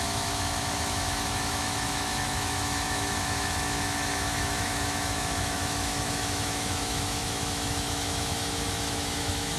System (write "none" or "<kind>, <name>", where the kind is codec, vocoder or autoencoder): autoencoder, DAC-VAE